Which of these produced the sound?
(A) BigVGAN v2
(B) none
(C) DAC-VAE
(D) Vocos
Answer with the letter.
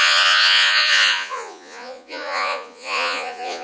D